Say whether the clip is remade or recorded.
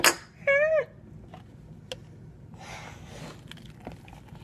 recorded